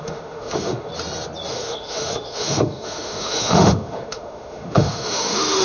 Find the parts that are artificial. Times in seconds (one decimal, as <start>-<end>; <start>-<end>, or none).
0.0-0.9; 1.5-5.6